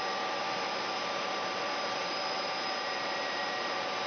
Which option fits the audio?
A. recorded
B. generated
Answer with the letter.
B